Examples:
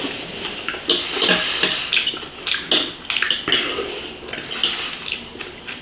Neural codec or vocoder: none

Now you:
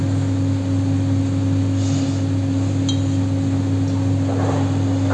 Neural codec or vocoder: none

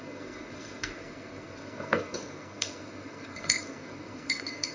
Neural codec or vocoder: codec, SNAC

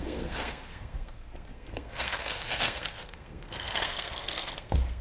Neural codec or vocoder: codec, SNAC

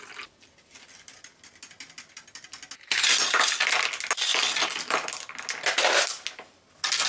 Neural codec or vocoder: none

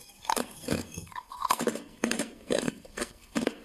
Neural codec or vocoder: codec, SNAC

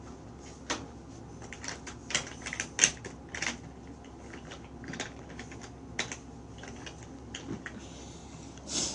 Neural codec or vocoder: none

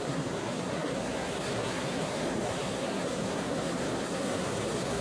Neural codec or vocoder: codec, SNAC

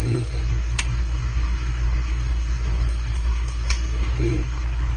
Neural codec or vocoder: codec, SNAC